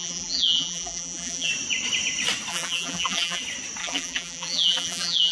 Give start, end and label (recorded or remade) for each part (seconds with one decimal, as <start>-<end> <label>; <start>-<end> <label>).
0.0-1.5 remade; 1.5-2.5 recorded; 2.5-3.4 remade; 3.4-3.8 recorded; 3.8-5.3 remade